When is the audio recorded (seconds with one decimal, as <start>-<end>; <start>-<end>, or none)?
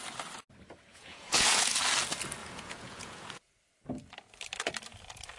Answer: 0.0-0.9; 1.8-2.4; 3.5-5.4